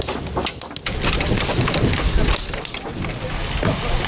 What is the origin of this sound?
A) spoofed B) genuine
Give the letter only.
B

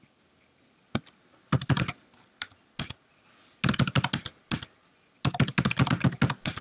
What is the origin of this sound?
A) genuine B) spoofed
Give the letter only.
A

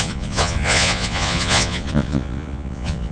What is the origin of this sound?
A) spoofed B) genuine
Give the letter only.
A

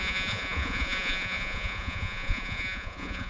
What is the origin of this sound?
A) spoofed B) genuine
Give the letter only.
A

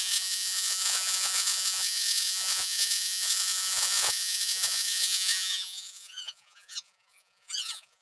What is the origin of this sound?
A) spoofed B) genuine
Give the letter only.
A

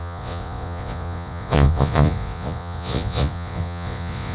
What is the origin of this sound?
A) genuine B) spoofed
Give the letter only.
B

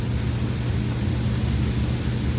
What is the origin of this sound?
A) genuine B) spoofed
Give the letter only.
A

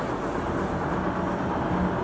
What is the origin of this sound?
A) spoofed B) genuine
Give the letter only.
B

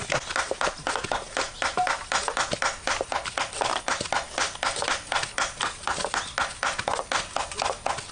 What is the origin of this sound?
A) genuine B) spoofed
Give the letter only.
A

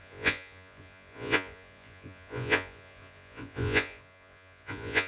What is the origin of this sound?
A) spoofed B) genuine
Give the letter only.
A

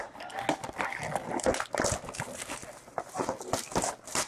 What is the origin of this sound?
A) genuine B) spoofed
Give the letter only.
A